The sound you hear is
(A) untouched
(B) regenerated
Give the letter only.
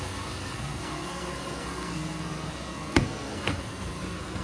B